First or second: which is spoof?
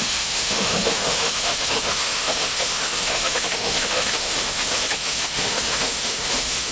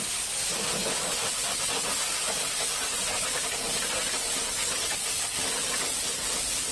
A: first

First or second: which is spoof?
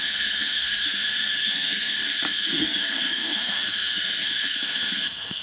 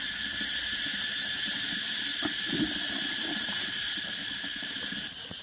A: first